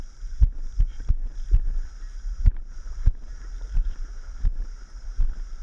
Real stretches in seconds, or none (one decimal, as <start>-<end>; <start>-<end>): 1.3-2.4